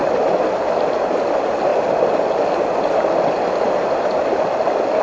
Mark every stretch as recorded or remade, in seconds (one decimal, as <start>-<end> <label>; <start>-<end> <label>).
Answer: 0.0-5.0 recorded